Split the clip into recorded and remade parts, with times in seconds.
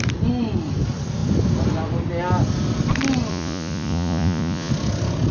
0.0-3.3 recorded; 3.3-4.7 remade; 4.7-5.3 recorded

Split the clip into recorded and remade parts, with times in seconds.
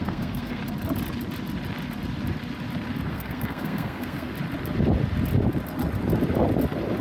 0.0-0.6 remade; 0.6-3.1 recorded; 3.1-4.3 remade; 4.3-7.0 recorded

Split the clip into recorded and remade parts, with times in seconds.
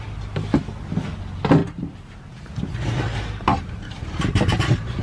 0.0-1.6 recorded; 1.6-2.5 remade; 2.5-3.5 recorded; 3.5-5.0 remade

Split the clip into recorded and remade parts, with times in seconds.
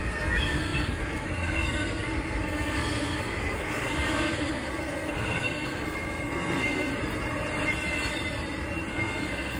0.0-6.9 remade; 6.9-8.9 recorded; 8.9-9.6 remade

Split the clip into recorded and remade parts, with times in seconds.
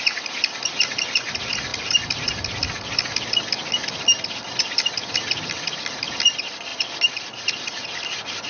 0.0-8.5 recorded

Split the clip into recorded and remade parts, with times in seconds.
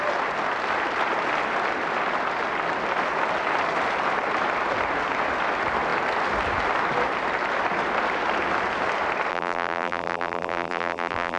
0.0-9.3 recorded; 9.3-11.4 remade